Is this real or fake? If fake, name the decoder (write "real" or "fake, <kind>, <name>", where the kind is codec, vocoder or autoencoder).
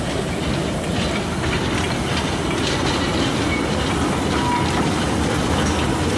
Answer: real